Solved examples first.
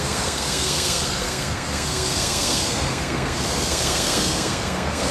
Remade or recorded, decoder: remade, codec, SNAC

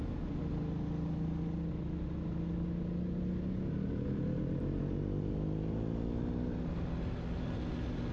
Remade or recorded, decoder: recorded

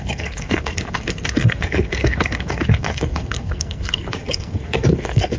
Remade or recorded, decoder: remade, codec, SNAC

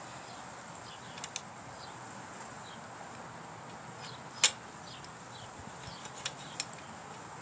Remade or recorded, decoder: recorded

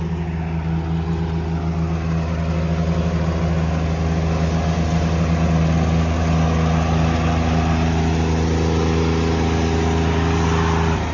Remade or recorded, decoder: recorded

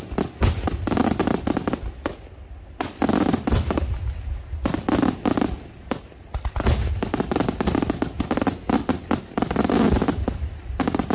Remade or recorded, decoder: recorded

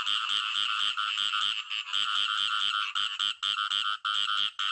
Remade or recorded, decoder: recorded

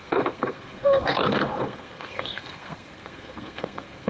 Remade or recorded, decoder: remade, codec, SNAC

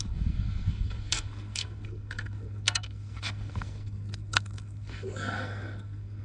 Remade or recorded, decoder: remade, codec, SNAC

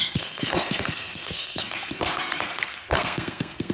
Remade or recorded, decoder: remade, codec, SNAC